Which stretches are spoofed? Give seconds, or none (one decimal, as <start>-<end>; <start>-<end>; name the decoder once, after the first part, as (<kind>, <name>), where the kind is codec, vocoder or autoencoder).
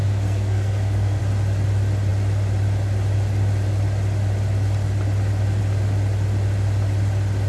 0.0-1.2 (codec, SNAC)